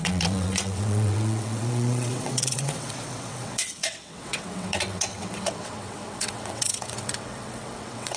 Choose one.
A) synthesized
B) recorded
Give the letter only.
A